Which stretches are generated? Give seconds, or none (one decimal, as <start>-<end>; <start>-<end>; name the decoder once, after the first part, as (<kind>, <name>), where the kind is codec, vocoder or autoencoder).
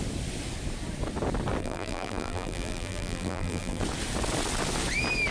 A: 1.6-3.8 (vocoder, BigVGAN v2)